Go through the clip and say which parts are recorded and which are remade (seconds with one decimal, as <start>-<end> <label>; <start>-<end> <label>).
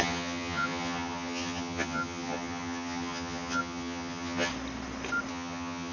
0.0-4.5 remade; 4.5-5.3 recorded; 5.3-5.9 remade